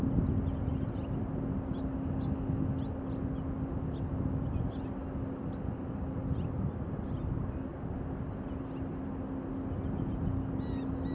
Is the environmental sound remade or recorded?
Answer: recorded